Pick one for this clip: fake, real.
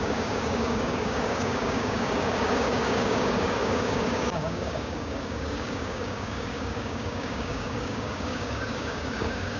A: fake